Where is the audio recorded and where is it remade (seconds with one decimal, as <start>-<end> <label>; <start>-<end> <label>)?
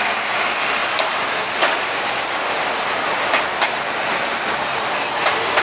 0.0-5.6 recorded